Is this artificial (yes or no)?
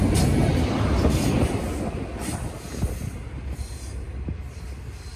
no